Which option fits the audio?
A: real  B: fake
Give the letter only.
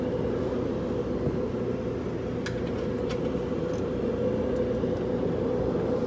A